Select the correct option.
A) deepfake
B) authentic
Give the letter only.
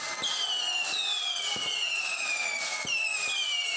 B